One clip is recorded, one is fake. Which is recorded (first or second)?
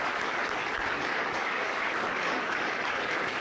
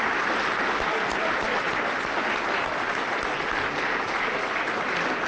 second